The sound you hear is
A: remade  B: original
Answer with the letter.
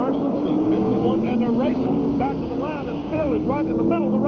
A